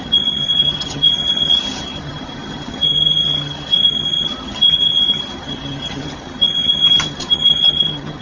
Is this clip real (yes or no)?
no